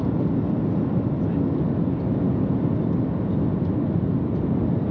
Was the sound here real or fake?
real